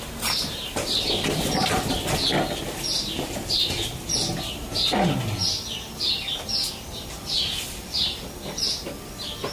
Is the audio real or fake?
real